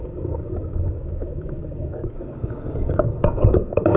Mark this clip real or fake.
fake